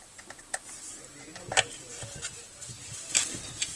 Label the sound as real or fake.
real